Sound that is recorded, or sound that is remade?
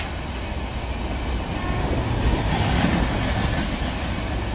recorded